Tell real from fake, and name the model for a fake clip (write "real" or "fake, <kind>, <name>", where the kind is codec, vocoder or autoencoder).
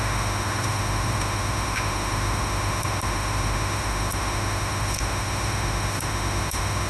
fake, autoencoder, DAC-VAE